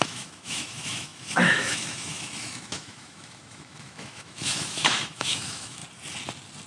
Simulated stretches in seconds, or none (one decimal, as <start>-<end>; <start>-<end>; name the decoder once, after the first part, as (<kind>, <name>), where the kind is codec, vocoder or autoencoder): 0.0-5.8 (autoencoder, DAC-VAE)